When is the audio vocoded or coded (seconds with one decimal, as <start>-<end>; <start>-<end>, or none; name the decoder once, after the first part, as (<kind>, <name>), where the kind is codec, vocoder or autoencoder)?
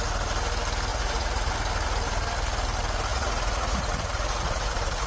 0.9-1.5 (vocoder, Vocos); 3.1-5.1